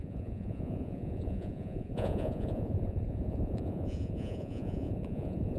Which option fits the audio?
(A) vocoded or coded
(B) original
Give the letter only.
A